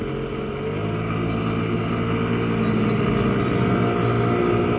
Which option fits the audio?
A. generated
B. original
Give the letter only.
B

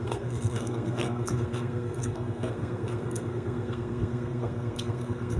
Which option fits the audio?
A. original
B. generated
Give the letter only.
B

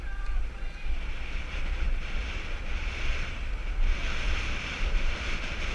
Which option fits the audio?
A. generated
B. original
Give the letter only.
B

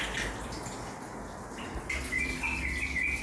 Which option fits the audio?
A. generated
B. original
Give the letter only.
B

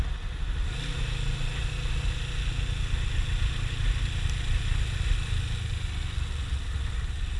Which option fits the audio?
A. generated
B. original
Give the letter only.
B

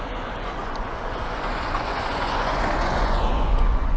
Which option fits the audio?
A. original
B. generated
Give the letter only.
B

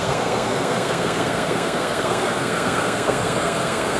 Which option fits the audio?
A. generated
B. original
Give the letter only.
A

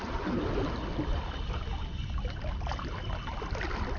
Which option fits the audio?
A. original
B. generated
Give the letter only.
A